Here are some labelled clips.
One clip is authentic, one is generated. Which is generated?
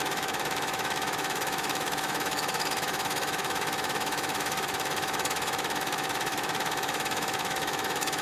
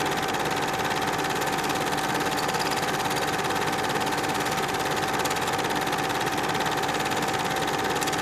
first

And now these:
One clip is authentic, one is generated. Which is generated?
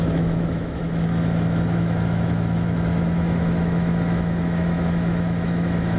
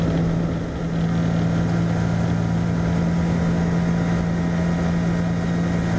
first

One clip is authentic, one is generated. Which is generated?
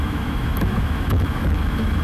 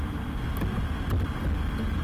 first